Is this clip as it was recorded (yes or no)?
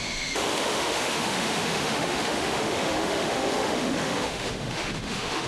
no